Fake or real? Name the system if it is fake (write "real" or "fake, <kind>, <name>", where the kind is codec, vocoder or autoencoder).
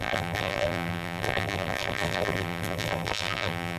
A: fake, vocoder, BigVGAN v2